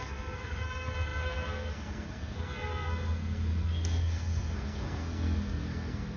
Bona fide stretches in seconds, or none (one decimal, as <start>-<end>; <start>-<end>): none